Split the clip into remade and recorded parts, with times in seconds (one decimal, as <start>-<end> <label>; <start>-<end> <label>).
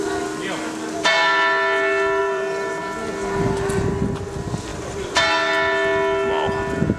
0.0-2.2 recorded; 2.2-2.8 remade; 2.8-4.7 recorded; 4.7-5.2 remade; 5.2-7.0 recorded